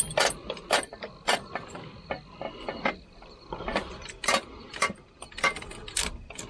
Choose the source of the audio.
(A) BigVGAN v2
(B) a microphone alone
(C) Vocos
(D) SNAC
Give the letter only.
B